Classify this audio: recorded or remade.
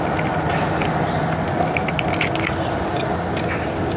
recorded